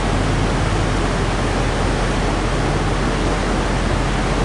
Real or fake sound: real